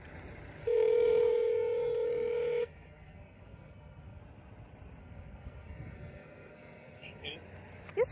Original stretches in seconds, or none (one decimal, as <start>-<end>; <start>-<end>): 0.0-0.6; 4.2-5.0; 7.3-8.1